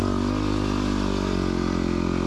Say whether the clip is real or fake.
real